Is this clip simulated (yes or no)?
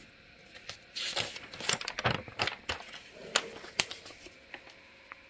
no